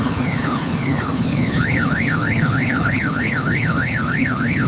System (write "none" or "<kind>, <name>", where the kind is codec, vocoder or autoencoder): codec, HILCodec